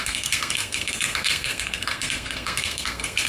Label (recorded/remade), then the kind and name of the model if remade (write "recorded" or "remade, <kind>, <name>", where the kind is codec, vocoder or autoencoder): remade, codec, SNAC